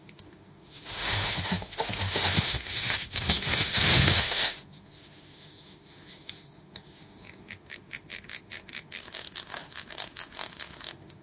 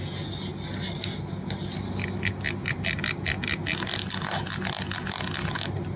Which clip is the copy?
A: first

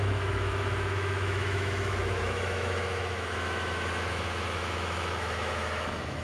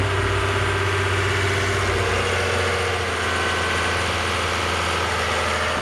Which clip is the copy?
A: first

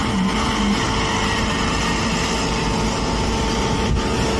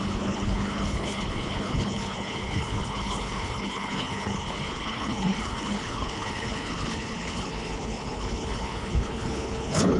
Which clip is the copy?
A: second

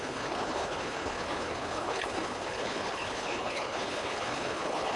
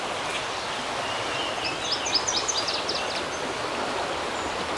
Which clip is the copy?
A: first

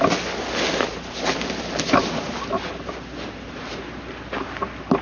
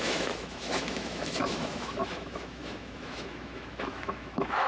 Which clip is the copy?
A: second